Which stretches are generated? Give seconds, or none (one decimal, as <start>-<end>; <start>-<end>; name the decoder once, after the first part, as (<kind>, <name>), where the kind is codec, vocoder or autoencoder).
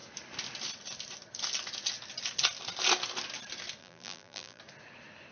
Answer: 3.8-4.6 (vocoder, BigVGAN v2)